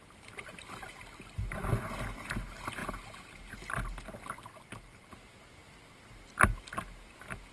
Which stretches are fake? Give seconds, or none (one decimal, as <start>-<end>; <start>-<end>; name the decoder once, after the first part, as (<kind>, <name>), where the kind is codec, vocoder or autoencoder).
none